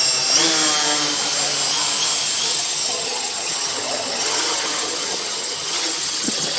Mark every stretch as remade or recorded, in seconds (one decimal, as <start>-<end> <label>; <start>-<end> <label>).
0.0-2.5 recorded; 2.5-6.6 remade